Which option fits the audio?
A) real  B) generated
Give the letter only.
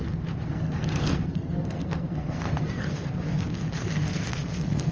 B